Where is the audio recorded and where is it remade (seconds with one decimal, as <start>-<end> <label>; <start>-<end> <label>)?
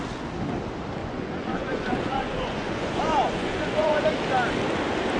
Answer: 0.0-1.0 recorded; 1.0-4.1 remade; 4.1-5.2 recorded